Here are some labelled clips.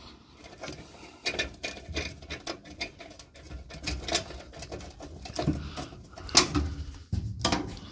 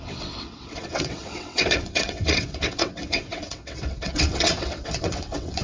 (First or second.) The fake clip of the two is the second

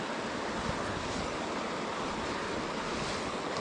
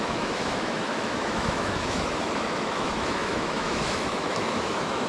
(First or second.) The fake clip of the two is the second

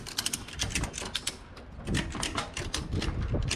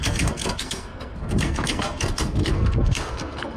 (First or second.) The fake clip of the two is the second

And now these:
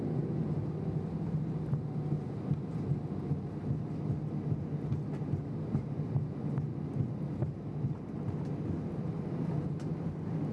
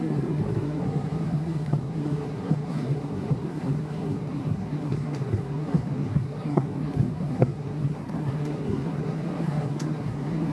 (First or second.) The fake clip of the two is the second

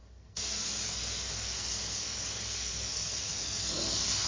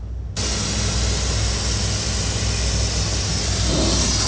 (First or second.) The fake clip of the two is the first